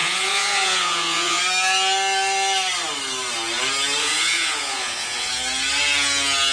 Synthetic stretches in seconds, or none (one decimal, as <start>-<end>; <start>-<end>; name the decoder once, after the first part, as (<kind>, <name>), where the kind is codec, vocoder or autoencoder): 0.0-1.4 (vocoder, Vocos); 4.0-5.3